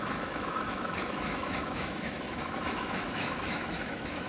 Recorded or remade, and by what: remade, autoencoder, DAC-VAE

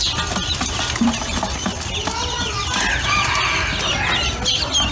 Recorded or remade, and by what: recorded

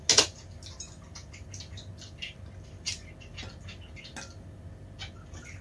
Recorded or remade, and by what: recorded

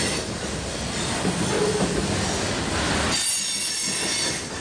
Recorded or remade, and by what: recorded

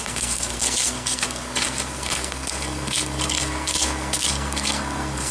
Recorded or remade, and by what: remade, codec, SNAC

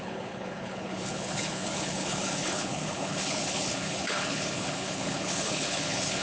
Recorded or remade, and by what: remade, codec, HILCodec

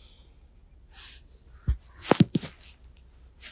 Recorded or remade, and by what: recorded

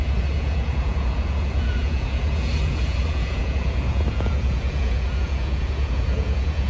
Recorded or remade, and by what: remade, vocoder, Vocos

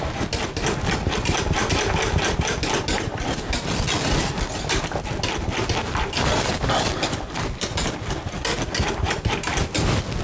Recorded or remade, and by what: recorded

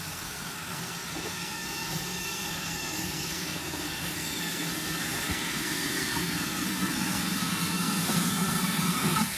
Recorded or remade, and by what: remade, codec, SNAC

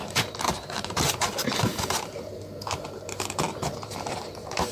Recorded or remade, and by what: remade, vocoder, BigVGAN v2